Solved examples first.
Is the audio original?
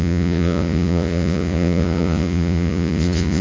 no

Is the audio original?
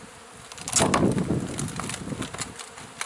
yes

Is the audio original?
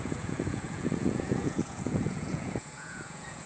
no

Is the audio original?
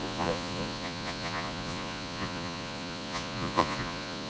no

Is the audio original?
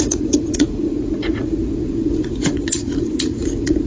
no